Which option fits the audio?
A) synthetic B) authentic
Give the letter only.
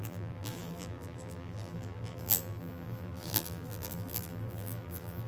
A